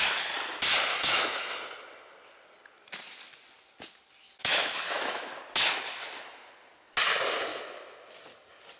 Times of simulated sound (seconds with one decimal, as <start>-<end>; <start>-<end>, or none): 0.9-1.6; 4.4-5.4; 7.5-8.1